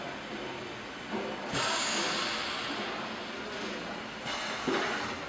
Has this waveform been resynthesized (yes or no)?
no